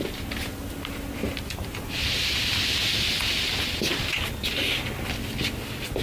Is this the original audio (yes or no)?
yes